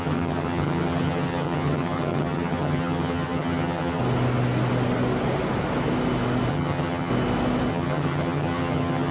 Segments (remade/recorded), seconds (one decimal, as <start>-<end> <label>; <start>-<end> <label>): 0.0-4.0 remade; 4.0-6.5 recorded; 6.5-7.1 remade; 7.1-7.7 recorded; 7.7-9.1 remade